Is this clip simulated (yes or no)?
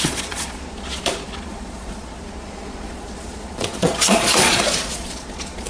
yes